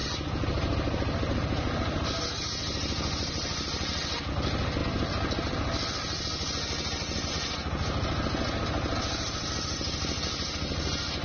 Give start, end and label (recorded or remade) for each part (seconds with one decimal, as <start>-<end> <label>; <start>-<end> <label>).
0.0-11.2 recorded